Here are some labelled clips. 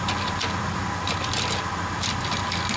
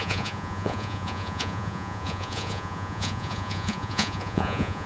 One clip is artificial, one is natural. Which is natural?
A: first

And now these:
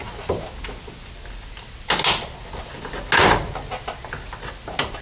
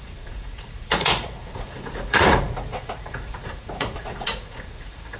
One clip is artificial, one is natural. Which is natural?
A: first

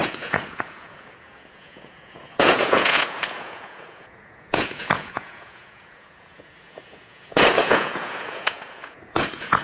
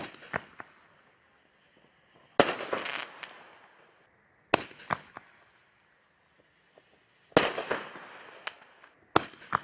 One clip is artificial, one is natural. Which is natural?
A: second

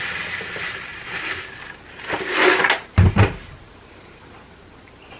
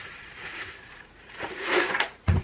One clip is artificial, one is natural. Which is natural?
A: first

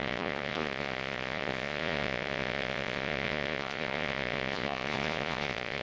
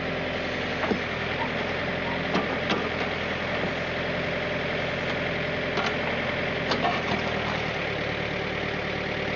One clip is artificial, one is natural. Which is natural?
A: second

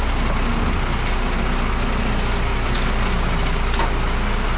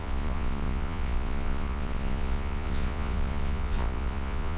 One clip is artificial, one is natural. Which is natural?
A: first